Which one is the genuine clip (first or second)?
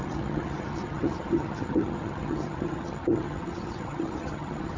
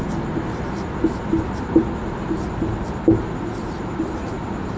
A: second